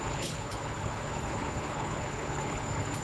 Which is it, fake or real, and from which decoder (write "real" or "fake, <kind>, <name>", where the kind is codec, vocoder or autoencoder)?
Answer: fake, codec, HILCodec